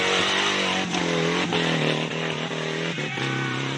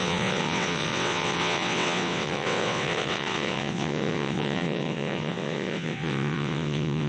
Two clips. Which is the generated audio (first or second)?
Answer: second